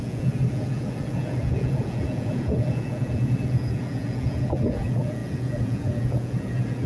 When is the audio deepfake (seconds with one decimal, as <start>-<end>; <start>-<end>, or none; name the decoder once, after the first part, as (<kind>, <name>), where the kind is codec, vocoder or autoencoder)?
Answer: 0.0-6.9 (vocoder, Vocos)